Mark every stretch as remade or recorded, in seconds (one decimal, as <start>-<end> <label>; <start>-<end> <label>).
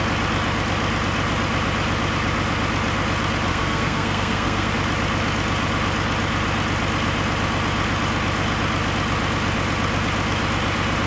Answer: 0.0-3.5 recorded; 3.5-4.7 remade; 4.7-11.1 recorded